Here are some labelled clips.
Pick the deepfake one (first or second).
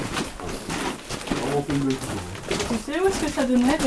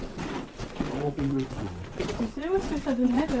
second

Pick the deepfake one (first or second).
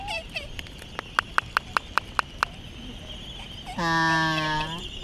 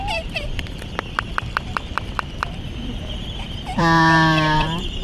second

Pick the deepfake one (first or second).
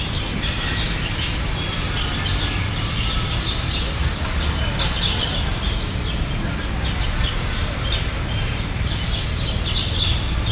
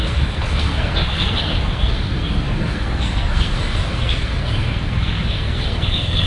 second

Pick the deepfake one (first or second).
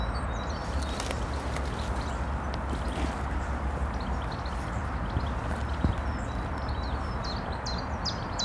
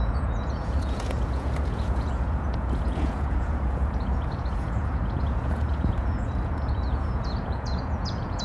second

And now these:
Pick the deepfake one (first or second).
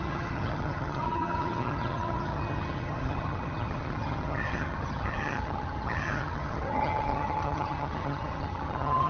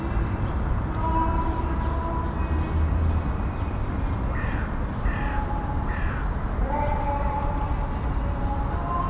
first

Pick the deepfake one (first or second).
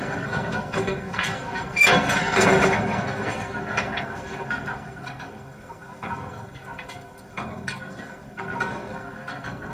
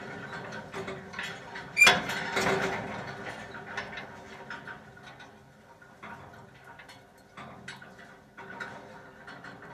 first